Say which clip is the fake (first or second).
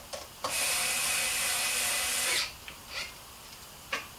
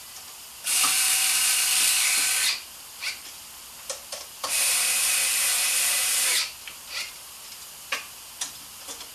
second